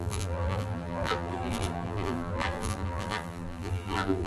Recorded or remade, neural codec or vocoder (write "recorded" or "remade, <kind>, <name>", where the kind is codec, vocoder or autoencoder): remade, vocoder, BigVGAN v2